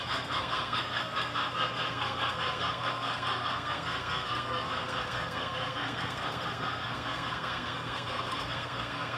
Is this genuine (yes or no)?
no